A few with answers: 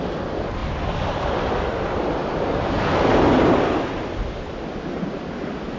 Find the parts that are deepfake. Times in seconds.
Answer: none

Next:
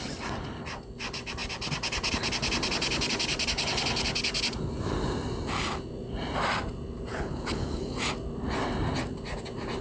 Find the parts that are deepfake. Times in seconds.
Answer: 7.1-8.0 (codec, HILCodec)

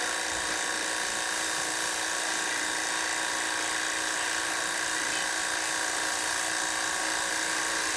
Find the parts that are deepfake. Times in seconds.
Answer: none

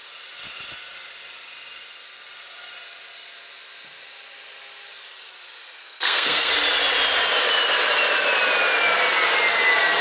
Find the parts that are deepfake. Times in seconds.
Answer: 5.8-6.5 (codec, SNAC)